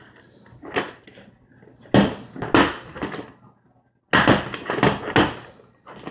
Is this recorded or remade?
recorded